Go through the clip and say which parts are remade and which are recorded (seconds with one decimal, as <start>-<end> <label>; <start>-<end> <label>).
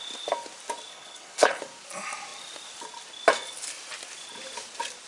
0.0-0.9 recorded; 0.9-1.6 remade; 1.6-5.1 recorded